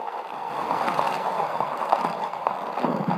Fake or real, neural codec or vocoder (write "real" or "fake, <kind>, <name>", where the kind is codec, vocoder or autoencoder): fake, codec, SNAC